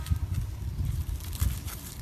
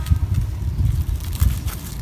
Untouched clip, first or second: second